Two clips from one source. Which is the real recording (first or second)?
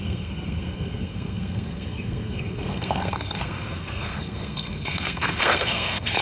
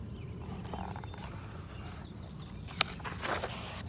second